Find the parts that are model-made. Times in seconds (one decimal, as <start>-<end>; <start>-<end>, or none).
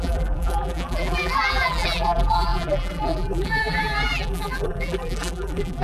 0.0-5.8